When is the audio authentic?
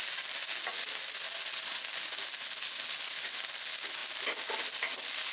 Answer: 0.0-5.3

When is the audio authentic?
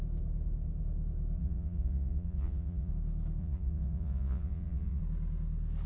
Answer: 0.0-1.4; 2.9-3.4; 5.0-5.9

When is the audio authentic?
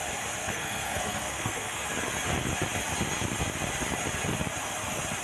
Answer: 0.0-0.4; 1.9-5.2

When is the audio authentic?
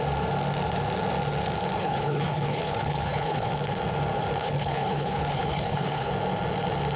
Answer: 0.0-1.8; 3.5-4.4; 6.1-7.0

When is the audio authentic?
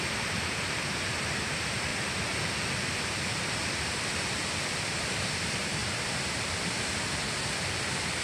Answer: 1.9-5.0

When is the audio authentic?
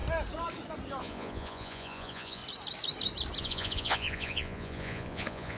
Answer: 0.0-1.0; 2.4-3.4